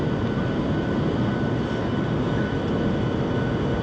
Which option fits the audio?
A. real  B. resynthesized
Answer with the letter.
A